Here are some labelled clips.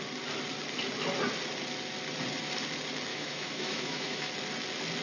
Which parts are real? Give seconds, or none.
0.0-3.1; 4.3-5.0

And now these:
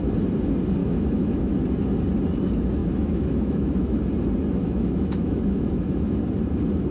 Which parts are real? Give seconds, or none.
0.0-0.8; 1.5-2.8; 4.0-4.6; 6.2-6.9

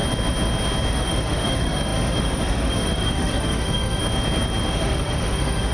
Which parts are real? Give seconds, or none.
0.0-0.9; 4.0-4.7

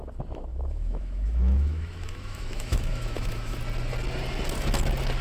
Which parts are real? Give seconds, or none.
0.0-0.5; 3.6-5.2